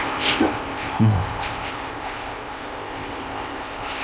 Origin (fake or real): fake